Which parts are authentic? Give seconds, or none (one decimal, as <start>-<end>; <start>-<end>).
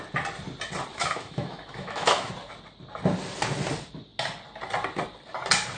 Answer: 0.0-0.9; 2.3-5.8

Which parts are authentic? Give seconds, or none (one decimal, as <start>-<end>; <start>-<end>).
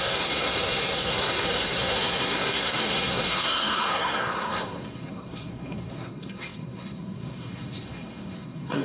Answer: none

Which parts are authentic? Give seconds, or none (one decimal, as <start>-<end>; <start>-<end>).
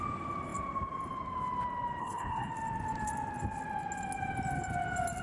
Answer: 0.0-2.0; 2.5-5.2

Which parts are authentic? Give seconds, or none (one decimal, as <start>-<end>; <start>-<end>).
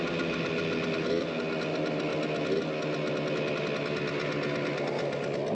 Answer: 0.0-5.5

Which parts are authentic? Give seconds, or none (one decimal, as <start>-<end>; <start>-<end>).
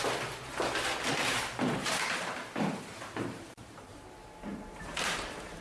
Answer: 0.0-1.8; 4.0-4.5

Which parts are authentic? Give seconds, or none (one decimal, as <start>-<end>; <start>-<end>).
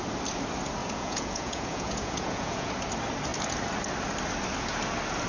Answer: 0.0-0.8; 2.7-5.3